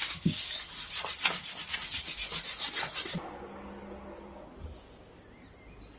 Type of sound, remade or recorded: recorded